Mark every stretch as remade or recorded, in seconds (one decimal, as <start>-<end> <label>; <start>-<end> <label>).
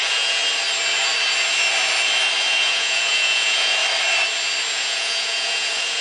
0.0-0.4 remade; 0.4-2.5 recorded; 2.5-3.8 remade; 3.8-4.7 recorded; 4.7-6.0 remade